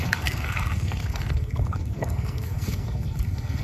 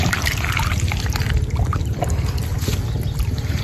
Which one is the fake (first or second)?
first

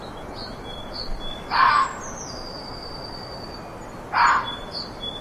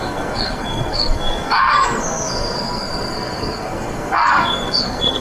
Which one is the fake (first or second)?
second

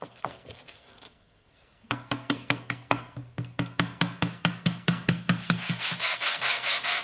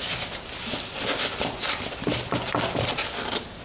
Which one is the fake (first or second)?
first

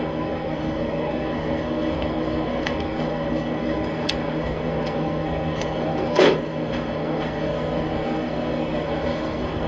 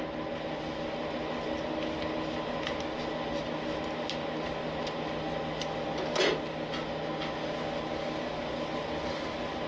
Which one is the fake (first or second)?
first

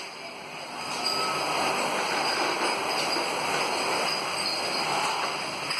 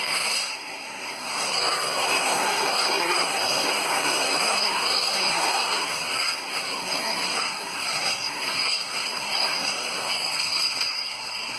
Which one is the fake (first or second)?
second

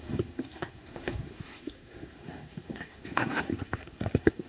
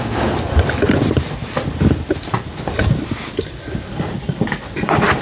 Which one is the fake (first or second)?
first